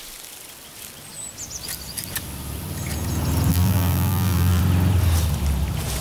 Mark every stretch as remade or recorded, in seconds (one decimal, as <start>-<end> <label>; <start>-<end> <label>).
0.0-3.5 recorded; 3.5-4.6 remade; 4.6-6.0 recorded